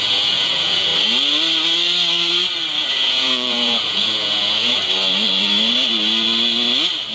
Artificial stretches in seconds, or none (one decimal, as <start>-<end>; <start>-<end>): 0.0-0.9; 2.8-4.8